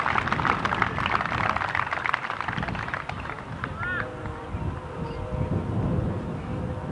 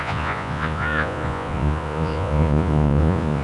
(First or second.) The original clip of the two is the first